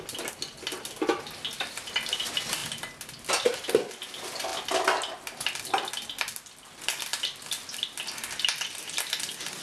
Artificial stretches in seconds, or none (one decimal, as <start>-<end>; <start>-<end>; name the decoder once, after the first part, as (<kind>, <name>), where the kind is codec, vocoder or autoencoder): none